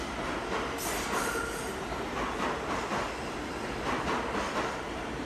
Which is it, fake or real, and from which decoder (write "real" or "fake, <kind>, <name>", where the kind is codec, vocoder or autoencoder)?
real